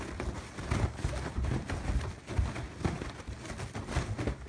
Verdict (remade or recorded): recorded